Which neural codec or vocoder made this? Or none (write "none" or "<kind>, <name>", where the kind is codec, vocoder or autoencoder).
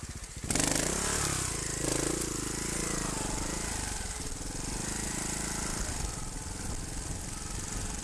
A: none